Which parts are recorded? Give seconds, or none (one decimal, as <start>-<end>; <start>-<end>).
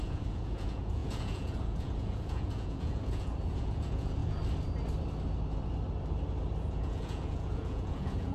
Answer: 4.2-6.7